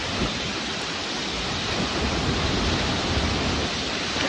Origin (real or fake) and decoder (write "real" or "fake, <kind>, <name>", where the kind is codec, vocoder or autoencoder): real